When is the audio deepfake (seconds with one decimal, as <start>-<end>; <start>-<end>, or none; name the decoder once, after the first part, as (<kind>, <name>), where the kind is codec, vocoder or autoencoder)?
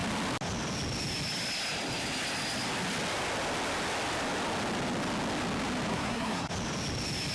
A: 5.9-6.5 (codec, SNAC)